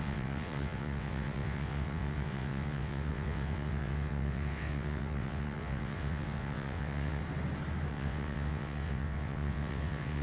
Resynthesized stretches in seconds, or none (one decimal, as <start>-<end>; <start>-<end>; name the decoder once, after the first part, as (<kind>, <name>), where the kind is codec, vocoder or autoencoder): 0.0-7.2 (vocoder, WaveNeXt); 7.9-10.2